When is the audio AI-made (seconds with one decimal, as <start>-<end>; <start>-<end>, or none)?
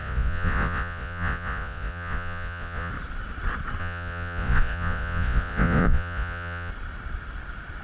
0.0-2.9; 3.8-6.7